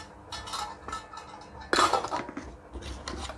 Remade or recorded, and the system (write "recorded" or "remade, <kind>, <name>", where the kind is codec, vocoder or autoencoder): recorded